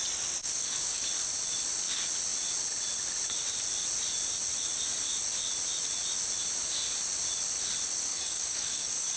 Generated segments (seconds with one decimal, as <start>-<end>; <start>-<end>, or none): 0.4-1.1; 8.1-9.2